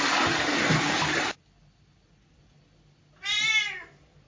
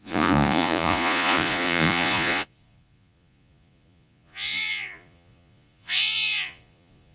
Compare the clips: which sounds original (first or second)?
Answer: first